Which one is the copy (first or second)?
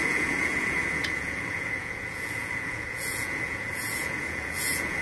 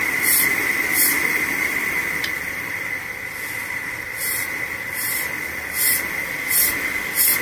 first